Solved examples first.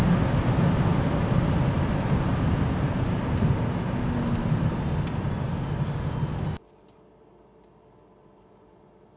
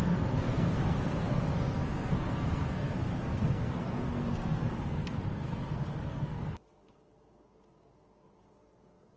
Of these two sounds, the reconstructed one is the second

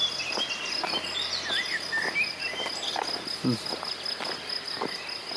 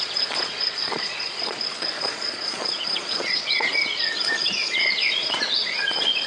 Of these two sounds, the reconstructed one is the second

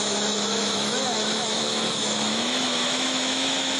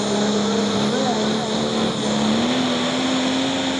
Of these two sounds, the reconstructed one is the first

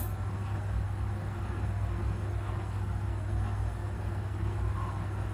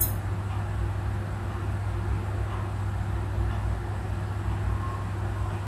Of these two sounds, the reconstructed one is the first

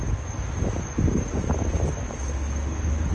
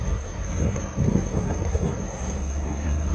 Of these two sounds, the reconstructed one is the second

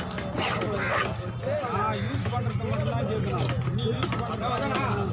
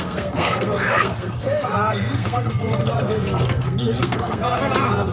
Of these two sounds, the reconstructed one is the second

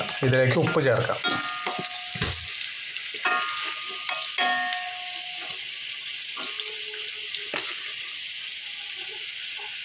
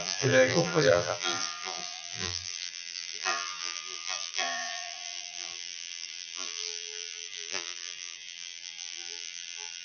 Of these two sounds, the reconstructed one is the second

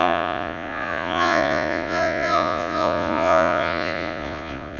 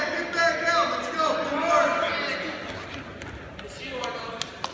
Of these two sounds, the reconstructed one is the first